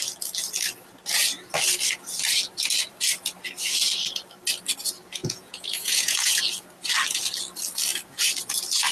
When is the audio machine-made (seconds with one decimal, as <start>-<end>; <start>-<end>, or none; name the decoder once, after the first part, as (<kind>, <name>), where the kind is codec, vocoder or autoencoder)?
5.2-6.4 (vocoder, Vocos)